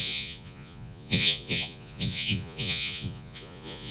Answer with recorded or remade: remade